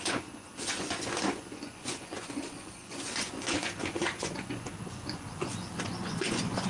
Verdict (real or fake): fake